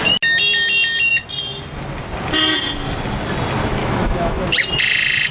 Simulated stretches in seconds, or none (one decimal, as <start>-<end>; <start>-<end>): 3.8-4.4